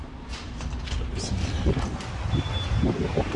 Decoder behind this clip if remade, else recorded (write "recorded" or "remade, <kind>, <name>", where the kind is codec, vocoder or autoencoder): recorded